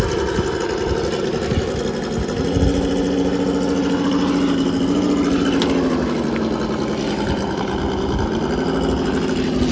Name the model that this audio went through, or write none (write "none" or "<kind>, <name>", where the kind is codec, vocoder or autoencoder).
none